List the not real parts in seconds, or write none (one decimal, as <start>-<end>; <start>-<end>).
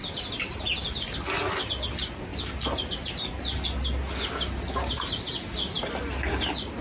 none